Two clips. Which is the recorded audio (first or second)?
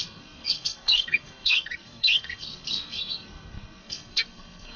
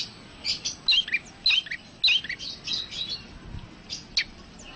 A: second